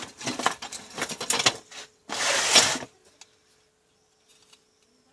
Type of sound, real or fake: real